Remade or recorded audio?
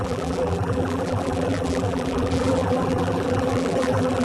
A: remade